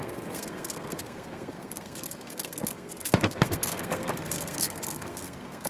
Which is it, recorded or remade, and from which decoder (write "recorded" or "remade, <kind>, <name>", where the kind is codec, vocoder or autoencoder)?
remade, codec, SNAC